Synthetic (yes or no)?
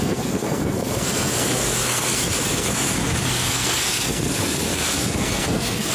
yes